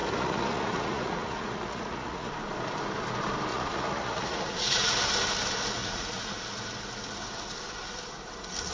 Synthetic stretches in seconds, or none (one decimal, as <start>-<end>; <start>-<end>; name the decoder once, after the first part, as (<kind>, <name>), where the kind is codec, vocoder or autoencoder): 0.0-2.3 (vocoder, Vocos); 3.5-4.9; 5.8-6.4